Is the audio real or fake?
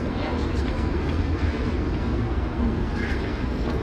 fake